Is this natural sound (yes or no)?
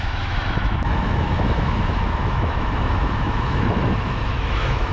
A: no